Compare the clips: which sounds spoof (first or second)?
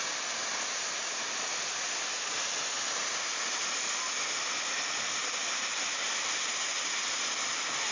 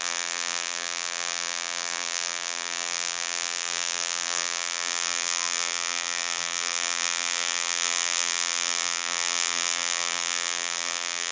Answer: second